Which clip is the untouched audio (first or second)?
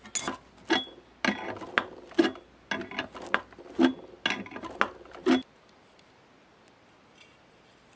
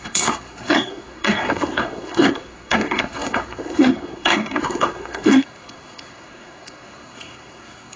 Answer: first